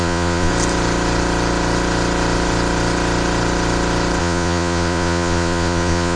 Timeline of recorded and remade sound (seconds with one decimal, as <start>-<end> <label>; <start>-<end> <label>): 0.0-0.5 remade; 0.5-4.2 recorded; 4.2-6.2 remade